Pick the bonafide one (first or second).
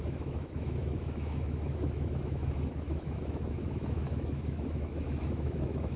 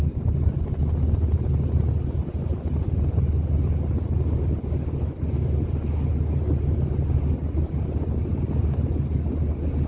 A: second